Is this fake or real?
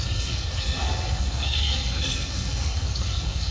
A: fake